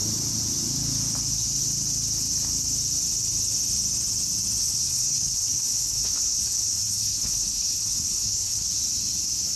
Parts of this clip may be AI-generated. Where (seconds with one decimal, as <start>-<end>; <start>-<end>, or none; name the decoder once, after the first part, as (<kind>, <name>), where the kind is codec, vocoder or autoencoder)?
4.6-8.7 (codec, HILCodec)